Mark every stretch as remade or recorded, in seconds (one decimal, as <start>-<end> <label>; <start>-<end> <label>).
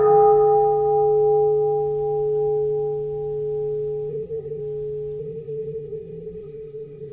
0.0-4.1 recorded; 4.1-4.6 remade; 4.6-5.2 recorded; 5.2-7.1 remade